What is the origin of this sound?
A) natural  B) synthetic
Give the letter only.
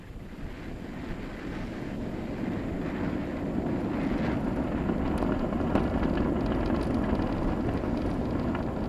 A